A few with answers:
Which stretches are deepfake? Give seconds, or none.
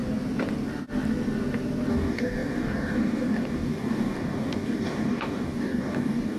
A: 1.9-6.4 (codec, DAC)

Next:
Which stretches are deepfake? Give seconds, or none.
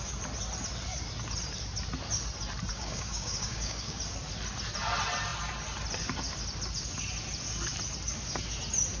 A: 2.7-4.0 (codec, DAC)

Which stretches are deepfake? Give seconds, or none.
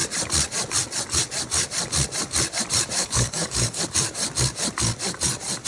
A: 3.0-3.8 (codec, DAC)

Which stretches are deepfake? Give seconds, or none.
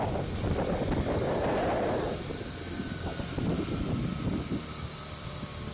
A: none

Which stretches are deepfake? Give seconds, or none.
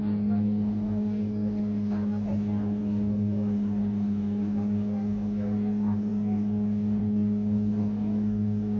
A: 0.0-8.8 (codec, DAC)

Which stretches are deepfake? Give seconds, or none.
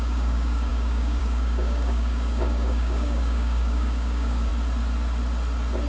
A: 0.0-4.5 (codec, DAC)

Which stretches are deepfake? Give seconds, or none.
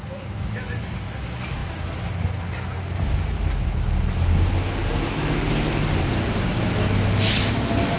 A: none